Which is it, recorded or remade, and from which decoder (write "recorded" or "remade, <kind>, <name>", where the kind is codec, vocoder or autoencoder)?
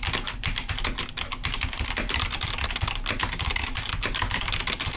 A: recorded